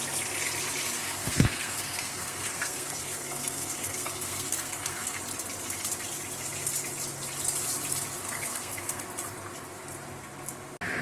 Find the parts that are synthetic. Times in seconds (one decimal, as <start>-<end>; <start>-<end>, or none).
1.0-5.2; 8.2-9.0